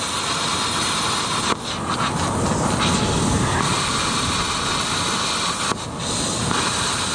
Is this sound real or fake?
real